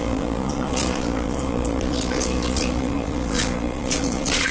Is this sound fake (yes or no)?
yes